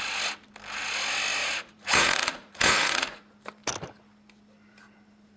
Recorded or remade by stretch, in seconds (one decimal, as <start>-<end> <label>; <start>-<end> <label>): 0.0-1.4 recorded; 1.4-3.2 remade; 3.2-5.4 recorded